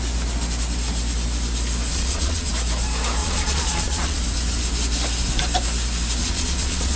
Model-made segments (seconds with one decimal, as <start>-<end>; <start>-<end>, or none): 1.9-2.5; 3.2-4.2; 6.2-7.0